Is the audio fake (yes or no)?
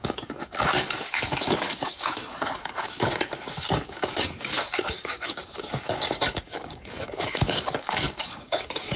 yes